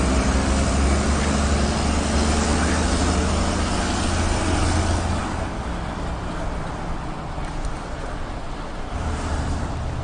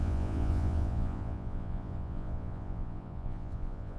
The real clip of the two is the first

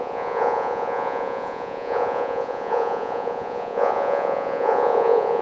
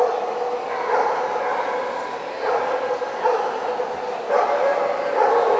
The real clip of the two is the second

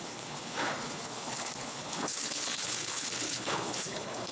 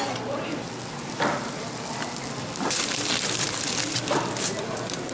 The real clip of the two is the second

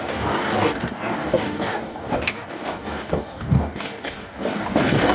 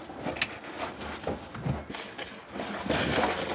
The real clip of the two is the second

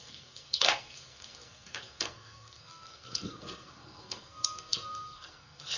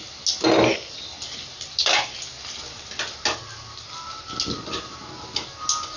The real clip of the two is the second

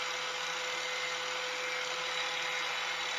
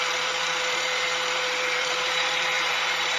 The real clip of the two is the first